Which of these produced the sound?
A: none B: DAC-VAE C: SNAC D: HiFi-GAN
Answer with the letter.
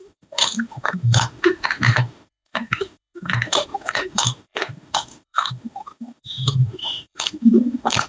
B